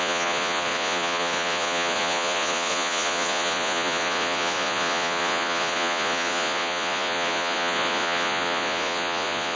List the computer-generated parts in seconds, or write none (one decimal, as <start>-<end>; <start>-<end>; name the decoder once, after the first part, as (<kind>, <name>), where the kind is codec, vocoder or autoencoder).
0.0-9.6 (vocoder, Vocos)